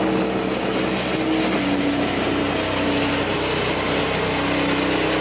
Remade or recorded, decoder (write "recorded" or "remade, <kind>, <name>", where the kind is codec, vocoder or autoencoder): recorded